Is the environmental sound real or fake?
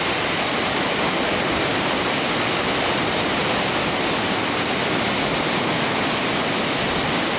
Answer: real